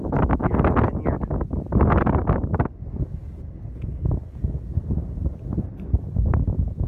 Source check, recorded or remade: recorded